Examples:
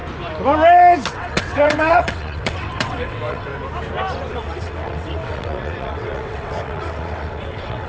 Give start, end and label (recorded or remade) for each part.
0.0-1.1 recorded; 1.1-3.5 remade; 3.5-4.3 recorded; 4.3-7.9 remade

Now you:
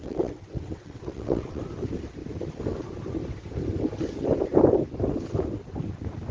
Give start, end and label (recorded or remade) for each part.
0.0-1.6 remade; 1.6-6.3 recorded

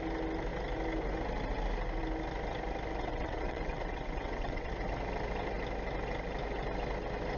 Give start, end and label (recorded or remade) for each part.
0.0-3.0 recorded; 3.0-4.7 remade; 4.7-7.4 recorded

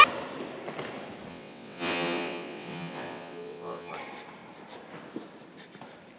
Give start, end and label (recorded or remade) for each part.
0.0-1.3 recorded; 1.3-3.9 remade; 3.9-6.2 recorded